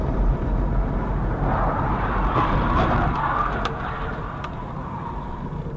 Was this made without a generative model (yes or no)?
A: no